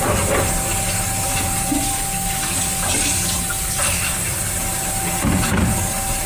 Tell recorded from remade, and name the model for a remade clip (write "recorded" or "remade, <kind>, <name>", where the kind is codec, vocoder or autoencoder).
recorded